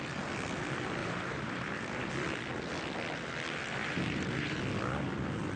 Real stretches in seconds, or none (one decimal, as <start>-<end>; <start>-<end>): 0.0-1.0; 2.1-3.8; 4.6-5.6